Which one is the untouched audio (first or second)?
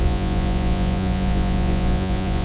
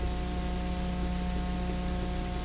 second